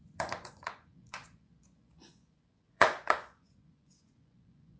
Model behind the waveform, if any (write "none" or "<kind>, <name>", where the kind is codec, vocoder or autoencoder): vocoder, Vocos